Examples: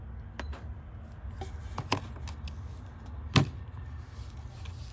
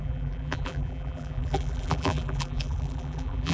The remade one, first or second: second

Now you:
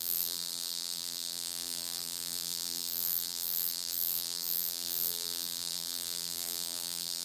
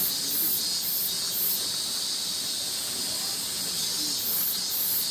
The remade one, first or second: first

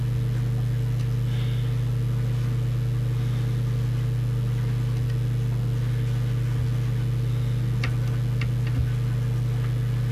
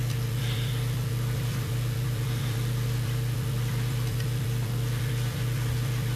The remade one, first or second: second